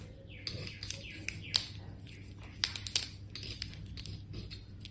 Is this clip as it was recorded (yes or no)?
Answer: yes